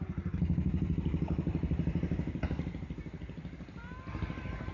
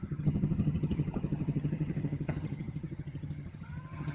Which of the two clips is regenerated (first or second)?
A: second